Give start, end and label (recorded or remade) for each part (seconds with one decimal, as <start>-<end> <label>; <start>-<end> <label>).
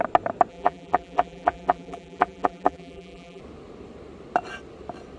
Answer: 0.0-0.5 recorded; 0.5-3.4 remade; 3.4-5.2 recorded